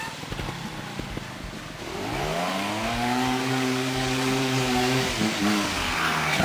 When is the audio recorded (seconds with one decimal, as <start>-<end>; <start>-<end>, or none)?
0.0-2.3